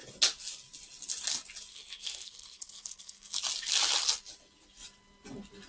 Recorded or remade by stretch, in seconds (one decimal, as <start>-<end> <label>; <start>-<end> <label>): 0.0-1.7 recorded; 1.7-3.4 remade; 3.4-5.7 recorded